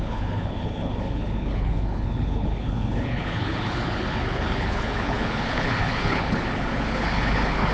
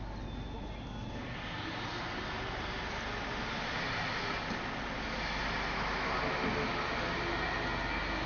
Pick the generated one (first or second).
first